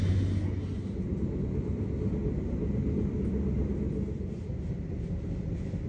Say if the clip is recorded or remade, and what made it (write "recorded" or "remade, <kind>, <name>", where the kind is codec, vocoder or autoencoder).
recorded